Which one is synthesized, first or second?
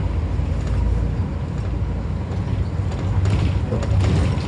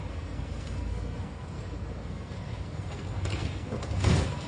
second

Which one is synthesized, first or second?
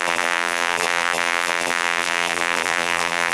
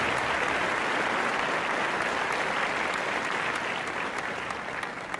first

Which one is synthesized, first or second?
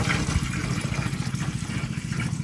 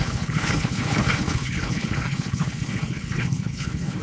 second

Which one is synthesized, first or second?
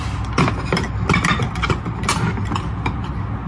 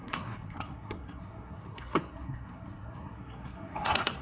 second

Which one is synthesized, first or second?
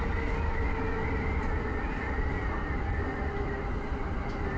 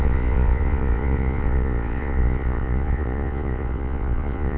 second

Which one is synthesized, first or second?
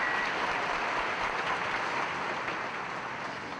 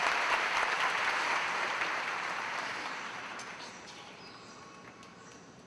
second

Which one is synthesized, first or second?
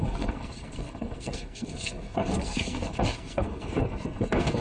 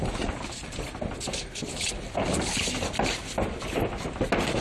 first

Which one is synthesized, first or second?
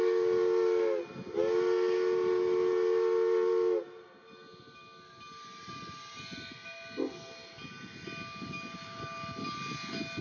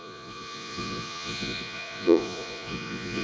second